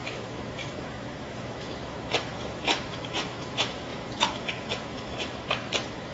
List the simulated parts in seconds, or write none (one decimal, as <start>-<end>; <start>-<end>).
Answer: 0.0-6.1